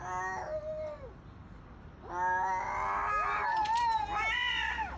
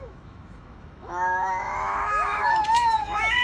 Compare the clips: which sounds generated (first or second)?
second